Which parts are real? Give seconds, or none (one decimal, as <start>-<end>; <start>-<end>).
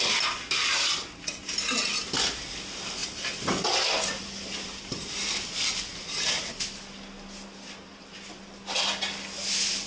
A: 0.0-9.9